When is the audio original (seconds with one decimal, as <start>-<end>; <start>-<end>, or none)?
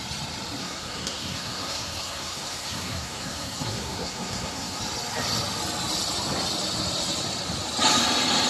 0.0-0.6; 4.8-8.5